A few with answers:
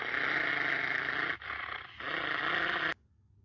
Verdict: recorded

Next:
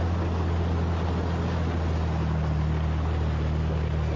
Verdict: recorded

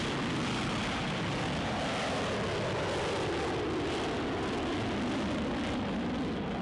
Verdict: recorded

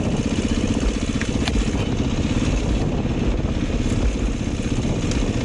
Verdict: recorded